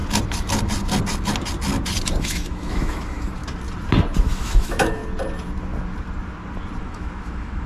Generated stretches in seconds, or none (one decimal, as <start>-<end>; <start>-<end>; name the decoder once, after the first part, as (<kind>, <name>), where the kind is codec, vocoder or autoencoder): 2.2-3.4 (autoencoder, DAC-VAE); 4.2-5.0; 6.8-7.7